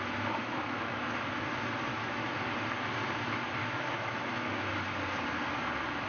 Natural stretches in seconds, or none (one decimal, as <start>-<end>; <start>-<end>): 0.0-0.4; 1.0-1.9; 2.4-3.6; 4.7-6.1